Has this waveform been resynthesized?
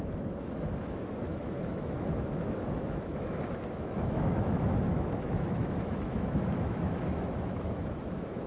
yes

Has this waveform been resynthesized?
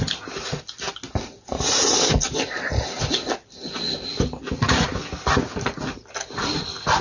no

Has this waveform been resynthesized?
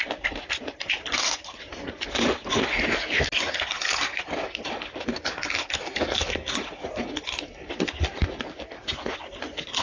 no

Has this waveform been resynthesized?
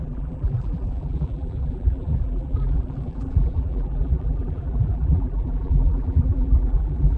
yes